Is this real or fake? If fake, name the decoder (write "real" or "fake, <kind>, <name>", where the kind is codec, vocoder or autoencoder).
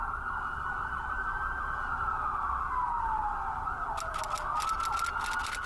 real